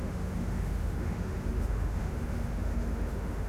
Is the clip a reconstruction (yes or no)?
yes